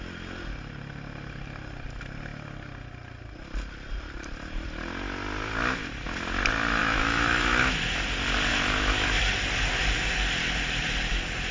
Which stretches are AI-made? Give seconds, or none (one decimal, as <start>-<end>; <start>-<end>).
6.8-7.8; 8.5-9.2